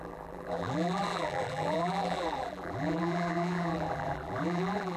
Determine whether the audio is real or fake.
fake